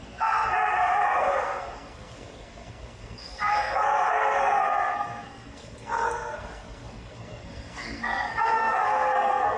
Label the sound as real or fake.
fake